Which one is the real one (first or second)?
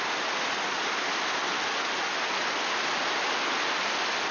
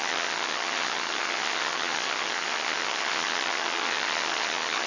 first